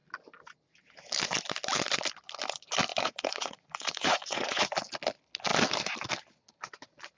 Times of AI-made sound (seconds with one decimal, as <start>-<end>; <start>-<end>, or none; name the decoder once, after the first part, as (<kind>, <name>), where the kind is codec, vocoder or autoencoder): 2.9-4.6 (vocoder, Vocos)